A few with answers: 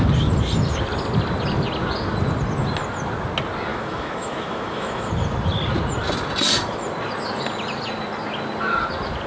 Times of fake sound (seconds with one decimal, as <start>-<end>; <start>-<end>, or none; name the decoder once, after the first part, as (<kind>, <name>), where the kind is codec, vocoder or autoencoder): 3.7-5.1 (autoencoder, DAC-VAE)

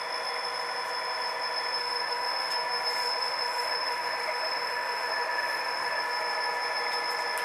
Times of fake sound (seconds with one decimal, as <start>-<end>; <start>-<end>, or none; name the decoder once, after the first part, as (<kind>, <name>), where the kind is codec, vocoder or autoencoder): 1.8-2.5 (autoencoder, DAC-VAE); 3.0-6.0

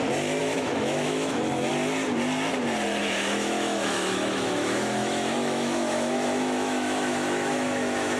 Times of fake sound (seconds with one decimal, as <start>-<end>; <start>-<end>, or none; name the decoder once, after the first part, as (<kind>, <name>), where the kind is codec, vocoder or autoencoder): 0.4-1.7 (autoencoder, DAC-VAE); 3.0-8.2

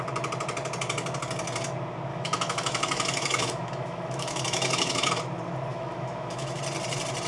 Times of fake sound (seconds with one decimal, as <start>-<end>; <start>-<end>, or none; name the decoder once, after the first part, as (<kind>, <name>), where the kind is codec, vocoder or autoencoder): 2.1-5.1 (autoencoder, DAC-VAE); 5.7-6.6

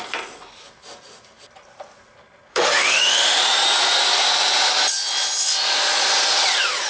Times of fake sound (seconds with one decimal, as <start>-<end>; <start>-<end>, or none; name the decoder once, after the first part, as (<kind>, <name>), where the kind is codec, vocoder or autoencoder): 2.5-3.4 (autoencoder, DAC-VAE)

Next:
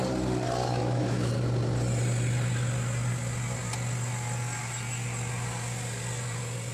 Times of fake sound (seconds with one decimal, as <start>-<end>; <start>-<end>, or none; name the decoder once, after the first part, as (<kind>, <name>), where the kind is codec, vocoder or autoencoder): 0.6-1.3 (autoencoder, DAC-VAE)